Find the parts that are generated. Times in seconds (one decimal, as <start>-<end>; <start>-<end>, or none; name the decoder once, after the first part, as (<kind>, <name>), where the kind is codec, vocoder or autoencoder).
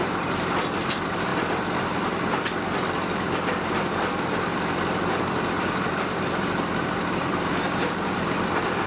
none